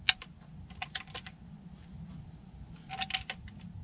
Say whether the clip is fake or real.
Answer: real